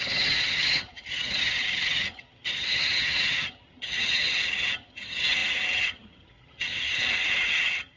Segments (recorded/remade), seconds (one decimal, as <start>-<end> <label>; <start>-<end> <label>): 0.0-8.0 remade